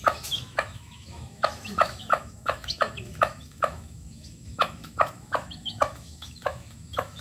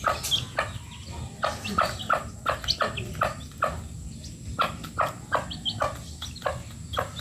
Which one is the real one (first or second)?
second